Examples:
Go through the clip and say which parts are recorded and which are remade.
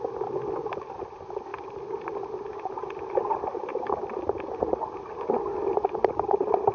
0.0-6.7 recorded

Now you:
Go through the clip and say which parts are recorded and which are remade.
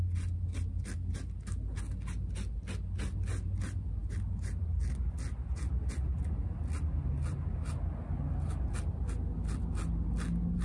0.0-10.6 recorded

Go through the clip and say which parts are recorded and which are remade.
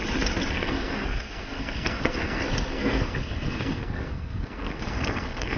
0.0-0.5 recorded; 0.5-5.6 remade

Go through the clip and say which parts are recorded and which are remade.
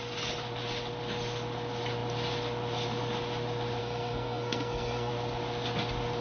0.0-3.8 recorded; 3.8-5.1 remade; 5.1-6.2 recorded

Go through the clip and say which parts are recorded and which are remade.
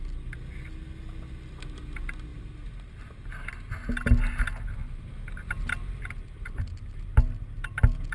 0.0-8.1 recorded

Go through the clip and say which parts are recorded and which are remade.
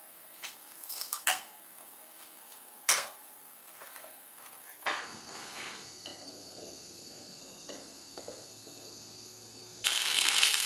0.0-10.7 remade